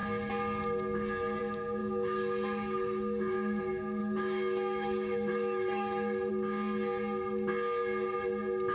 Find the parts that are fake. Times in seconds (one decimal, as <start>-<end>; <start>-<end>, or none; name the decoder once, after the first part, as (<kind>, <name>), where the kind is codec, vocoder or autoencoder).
1.8-3.6 (autoencoder, DAC-VAE); 4.0-6.3